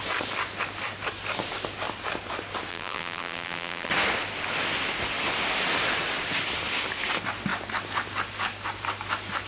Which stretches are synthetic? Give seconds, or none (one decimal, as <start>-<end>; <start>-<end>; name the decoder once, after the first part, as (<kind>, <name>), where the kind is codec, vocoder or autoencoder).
2.7-3.9 (vocoder, BigVGAN v2)